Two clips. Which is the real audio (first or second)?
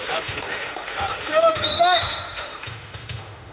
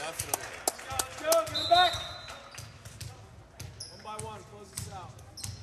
second